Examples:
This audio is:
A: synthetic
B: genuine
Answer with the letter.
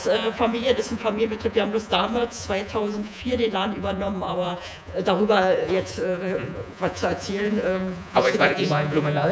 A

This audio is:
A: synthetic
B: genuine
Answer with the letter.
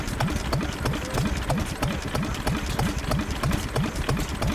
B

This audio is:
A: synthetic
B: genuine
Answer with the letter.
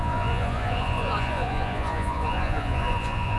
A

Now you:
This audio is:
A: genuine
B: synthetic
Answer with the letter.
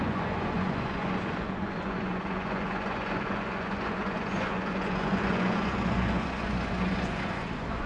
B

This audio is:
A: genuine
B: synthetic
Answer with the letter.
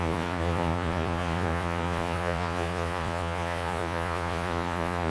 B